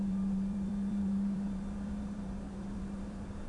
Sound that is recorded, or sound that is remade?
remade